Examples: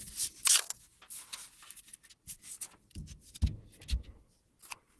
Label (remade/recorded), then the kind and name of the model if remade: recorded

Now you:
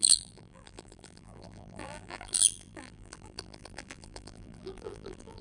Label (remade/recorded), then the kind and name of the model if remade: remade, vocoder, BigVGAN v2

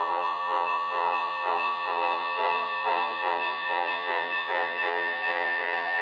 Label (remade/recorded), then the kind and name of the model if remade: remade, vocoder, BigVGAN v2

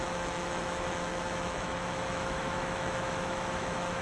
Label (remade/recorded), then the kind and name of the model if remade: remade, autoencoder, DAC-VAE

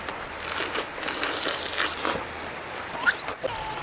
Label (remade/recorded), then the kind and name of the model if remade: recorded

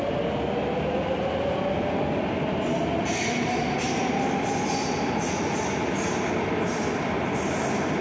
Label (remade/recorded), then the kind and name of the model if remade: recorded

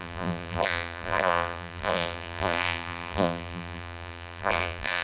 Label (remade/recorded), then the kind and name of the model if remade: remade, vocoder, BigVGAN v2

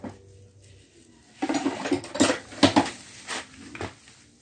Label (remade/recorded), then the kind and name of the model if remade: recorded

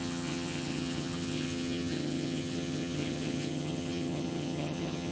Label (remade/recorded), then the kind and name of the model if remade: remade, vocoder, HiFi-GAN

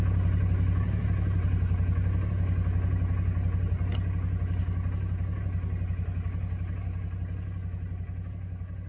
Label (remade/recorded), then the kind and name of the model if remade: recorded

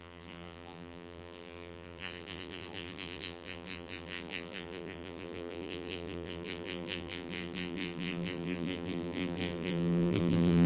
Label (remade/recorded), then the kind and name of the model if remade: remade, vocoder, BigVGAN v2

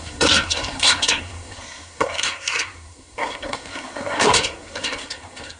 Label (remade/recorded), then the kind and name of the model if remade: remade, codec, SNAC